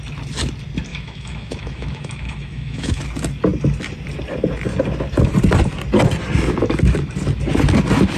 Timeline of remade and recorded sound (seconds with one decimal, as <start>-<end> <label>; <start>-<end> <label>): 0.0-0.9 recorded; 0.9-3.0 remade; 3.0-8.2 recorded

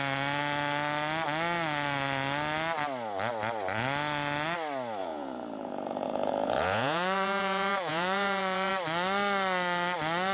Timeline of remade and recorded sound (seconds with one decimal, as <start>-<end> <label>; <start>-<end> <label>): 0.0-5.0 recorded; 5.0-8.7 remade; 8.7-10.3 recorded

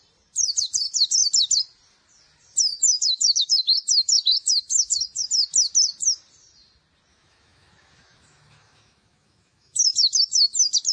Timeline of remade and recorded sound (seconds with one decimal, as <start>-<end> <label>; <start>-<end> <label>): 0.0-2.7 recorded; 2.7-5.3 remade; 5.3-7.1 recorded; 7.1-10.4 remade; 10.4-10.9 recorded

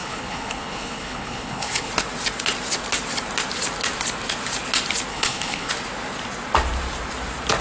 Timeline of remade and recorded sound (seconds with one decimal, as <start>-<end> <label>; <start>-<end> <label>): 0.0-1.9 remade; 1.9-5.1 recorded; 5.1-5.7 remade; 5.7-7.6 recorded

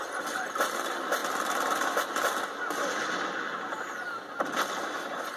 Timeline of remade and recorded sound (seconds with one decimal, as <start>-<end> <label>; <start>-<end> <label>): 0.0-1.2 remade; 1.2-4.4 recorded; 4.4-5.4 remade